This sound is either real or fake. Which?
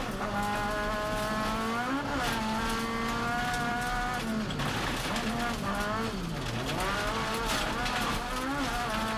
real